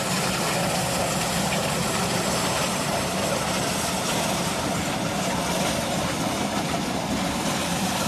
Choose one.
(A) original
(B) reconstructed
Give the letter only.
A